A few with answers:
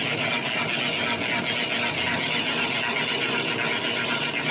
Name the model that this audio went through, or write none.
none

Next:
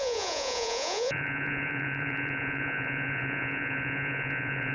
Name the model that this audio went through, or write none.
vocoder, Vocos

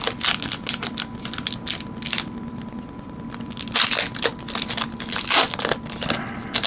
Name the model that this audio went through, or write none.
none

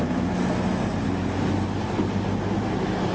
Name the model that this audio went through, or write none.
none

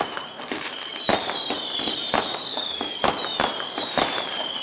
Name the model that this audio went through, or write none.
vocoder, BigVGAN v2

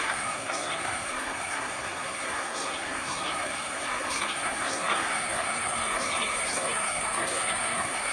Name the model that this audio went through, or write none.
codec, SNAC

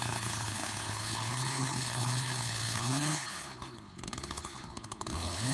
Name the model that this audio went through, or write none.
codec, HILCodec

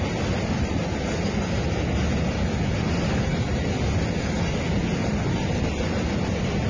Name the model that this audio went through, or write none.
none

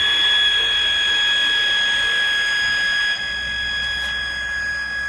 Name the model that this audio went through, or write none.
none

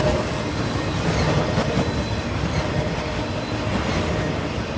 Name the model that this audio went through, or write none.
none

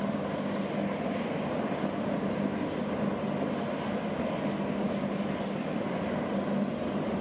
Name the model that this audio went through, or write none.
none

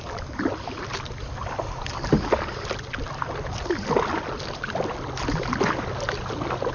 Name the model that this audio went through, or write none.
none